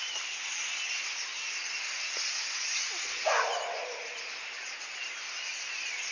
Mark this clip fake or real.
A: real